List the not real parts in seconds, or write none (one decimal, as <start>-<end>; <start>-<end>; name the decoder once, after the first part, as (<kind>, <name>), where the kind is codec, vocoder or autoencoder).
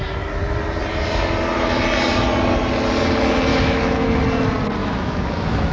3.5-4.2 (autoencoder, DAC-VAE); 4.8-5.7